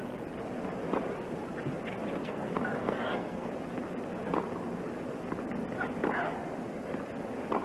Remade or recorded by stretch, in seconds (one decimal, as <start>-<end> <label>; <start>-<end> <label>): 0.0-2.2 recorded; 2.2-3.5 remade; 3.5-7.6 recorded